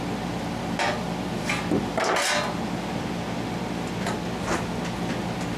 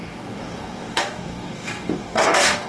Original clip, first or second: first